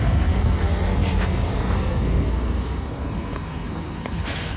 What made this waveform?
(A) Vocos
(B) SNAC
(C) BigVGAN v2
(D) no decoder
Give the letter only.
B